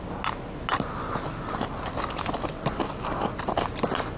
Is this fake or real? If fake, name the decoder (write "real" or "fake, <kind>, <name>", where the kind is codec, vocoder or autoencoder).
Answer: real